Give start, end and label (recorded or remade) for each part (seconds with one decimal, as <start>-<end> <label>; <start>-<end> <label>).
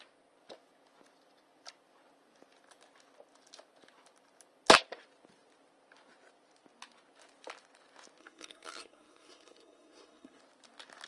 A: 0.0-8.2 recorded; 8.2-10.4 remade; 10.4-11.1 recorded